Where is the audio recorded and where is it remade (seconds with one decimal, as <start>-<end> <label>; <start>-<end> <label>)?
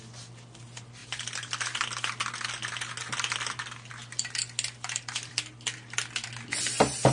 0.0-7.1 recorded